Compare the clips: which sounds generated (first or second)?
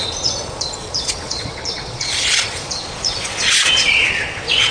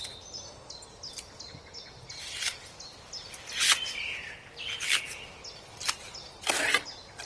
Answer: first